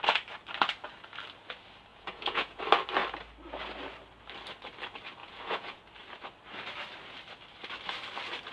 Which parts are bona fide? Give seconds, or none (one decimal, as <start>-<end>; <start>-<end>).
0.0-1.9; 2.6-5.2; 5.8-8.5